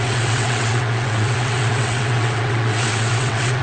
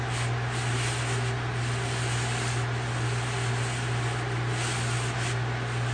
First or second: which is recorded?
second